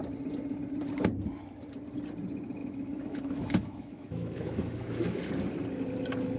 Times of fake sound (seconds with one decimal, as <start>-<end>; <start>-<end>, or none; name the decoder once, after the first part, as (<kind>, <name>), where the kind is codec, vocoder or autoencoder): 2.6-5.2 (autoencoder, DAC-VAE)